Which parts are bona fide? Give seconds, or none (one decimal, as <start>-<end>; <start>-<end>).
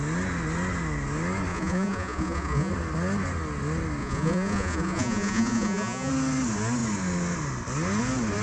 0.0-1.5; 2.7-4.0; 6.1-8.4